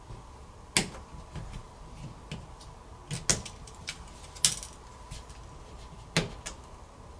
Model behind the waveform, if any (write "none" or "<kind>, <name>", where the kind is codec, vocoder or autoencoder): none